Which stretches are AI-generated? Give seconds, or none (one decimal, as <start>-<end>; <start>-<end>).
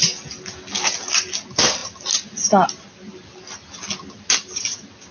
none